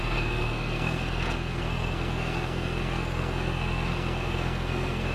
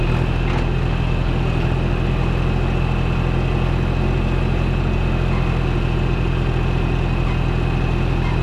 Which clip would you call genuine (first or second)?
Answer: second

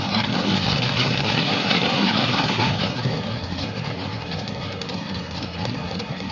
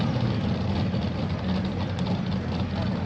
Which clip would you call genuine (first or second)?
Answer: second